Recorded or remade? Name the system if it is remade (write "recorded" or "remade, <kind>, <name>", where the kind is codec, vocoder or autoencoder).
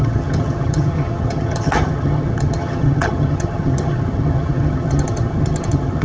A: remade, vocoder, HiFi-GAN